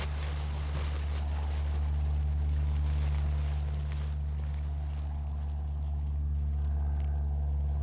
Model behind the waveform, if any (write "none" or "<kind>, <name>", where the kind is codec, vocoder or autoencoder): none